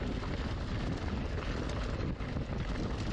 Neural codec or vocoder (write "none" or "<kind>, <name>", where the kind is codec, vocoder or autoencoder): none